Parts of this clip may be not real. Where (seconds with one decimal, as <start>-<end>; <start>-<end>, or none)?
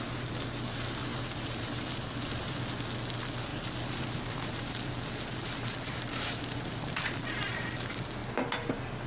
1.1-2.6; 3.5-7.7